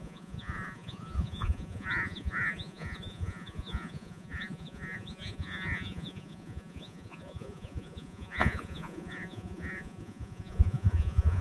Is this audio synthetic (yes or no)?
yes